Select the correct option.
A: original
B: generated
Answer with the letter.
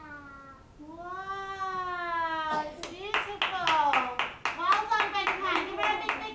A